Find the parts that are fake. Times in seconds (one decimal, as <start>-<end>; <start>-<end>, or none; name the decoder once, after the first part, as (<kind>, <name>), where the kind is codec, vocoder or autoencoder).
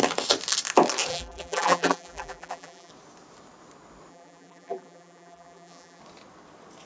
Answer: 1.1-2.9 (vocoder, BigVGAN v2); 4.1-6.0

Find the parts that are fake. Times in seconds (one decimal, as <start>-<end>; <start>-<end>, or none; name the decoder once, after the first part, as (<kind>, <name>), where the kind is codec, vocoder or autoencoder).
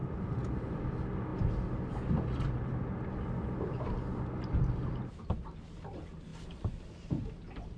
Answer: 0.0-0.8 (vocoder, BigVGAN v2); 6.3-7.3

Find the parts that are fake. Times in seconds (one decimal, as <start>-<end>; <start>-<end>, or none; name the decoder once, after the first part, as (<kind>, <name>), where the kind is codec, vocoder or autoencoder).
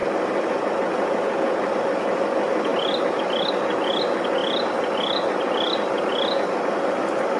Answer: none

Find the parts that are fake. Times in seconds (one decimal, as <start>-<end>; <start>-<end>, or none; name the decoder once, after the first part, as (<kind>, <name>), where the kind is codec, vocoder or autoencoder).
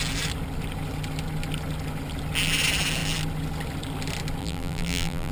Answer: 4.4-5.3 (vocoder, BigVGAN v2)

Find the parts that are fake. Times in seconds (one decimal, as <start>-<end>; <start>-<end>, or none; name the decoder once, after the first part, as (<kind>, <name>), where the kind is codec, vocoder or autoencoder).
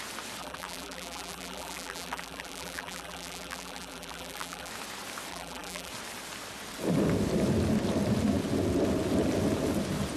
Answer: 0.4-4.7 (vocoder, BigVGAN v2); 5.3-5.9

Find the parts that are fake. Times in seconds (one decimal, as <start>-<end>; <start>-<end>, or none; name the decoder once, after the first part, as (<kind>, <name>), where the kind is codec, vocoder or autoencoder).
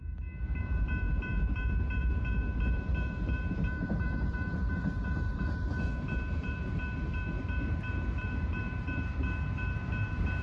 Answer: 0.6-10.4 (vocoder, BigVGAN v2)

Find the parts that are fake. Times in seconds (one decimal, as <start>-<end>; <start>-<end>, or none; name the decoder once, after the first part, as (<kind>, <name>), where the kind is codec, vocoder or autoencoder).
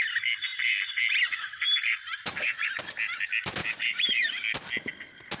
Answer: none